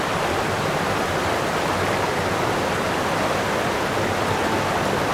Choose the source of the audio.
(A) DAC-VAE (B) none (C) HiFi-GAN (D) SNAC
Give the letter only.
B